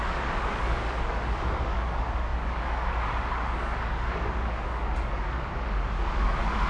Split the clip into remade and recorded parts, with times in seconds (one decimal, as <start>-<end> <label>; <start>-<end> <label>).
0.0-6.7 remade